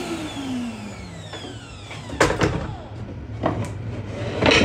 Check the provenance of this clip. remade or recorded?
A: recorded